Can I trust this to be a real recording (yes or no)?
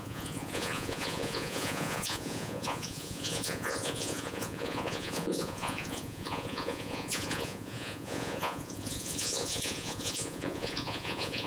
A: no